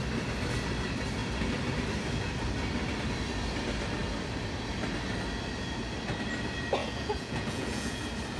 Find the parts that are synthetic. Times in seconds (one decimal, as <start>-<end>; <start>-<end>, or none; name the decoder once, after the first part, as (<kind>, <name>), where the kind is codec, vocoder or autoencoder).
6.8-8.0 (vocoder, Vocos)